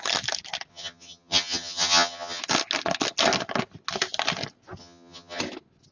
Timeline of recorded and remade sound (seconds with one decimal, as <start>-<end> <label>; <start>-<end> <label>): 0.0-0.7 recorded; 0.7-2.4 remade; 2.4-4.8 recorded; 4.8-5.4 remade; 5.4-5.9 recorded